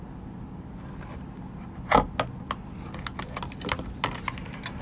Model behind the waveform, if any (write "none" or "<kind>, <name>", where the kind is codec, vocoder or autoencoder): none